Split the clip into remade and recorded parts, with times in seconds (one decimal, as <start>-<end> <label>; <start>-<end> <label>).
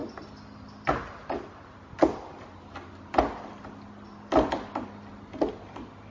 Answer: 0.0-6.1 recorded